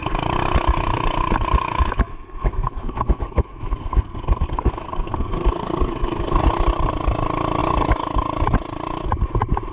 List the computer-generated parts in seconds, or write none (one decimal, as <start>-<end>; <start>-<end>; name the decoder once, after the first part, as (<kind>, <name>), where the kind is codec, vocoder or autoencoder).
2.1-6.4 (codec, SNAC)